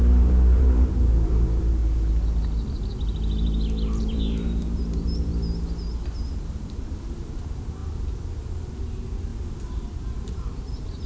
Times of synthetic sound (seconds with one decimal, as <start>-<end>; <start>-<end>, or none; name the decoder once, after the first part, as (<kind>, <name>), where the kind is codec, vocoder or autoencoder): 0.0-1.8 (vocoder, BigVGAN v2); 4.0-5.3; 6.4-7.8; 8.7-9.3; 9.8-11.1